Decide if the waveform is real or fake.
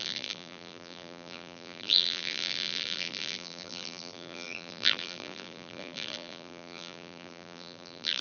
fake